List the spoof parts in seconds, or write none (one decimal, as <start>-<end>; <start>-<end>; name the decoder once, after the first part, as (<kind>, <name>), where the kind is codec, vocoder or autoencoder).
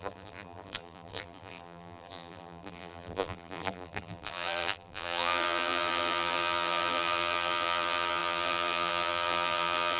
0.0-10.0 (vocoder, BigVGAN v2)